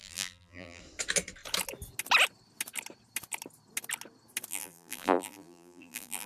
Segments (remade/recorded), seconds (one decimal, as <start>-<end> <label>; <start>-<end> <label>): 0.0-0.8 remade; 0.8-4.5 recorded; 4.5-6.3 remade